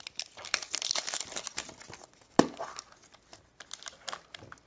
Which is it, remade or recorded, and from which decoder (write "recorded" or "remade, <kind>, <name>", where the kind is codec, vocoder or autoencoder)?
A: recorded